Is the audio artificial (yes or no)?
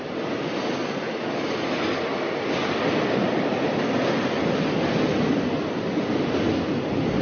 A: no